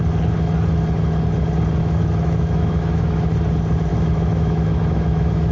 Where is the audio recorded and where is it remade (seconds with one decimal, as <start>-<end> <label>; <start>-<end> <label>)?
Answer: 0.0-1.8 recorded; 1.8-3.3 remade; 3.3-3.9 recorded; 3.9-5.5 remade